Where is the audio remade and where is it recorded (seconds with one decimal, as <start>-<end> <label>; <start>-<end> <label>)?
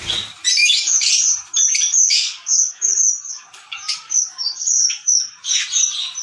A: 0.0-0.6 recorded; 0.6-1.1 remade; 1.1-1.9 recorded; 1.9-5.6 remade; 5.6-6.2 recorded